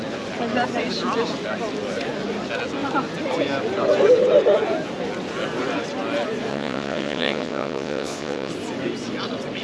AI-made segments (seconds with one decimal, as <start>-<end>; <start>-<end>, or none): 6.5-8.5